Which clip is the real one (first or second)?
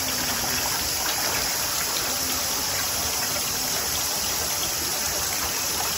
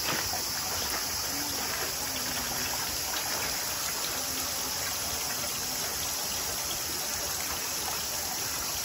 second